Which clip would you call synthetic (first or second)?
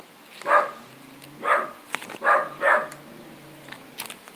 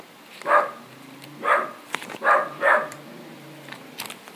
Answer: second